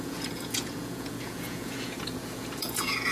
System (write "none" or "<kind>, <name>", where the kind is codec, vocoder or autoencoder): vocoder, Vocos